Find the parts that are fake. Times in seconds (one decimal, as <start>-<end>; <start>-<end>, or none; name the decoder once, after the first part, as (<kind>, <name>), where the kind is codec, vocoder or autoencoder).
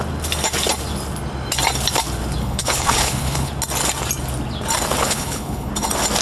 2.4-3.5 (codec, HILCodec); 5.0-5.7